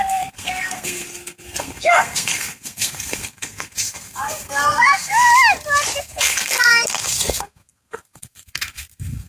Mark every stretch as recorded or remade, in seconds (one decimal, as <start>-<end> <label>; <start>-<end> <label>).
0.0-5.3 remade; 5.3-6.0 recorded; 6.0-9.3 remade